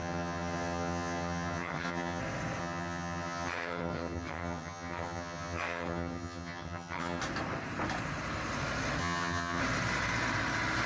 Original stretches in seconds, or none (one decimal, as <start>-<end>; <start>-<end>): 2.2-2.6; 7.2-9.0; 9.6-10.9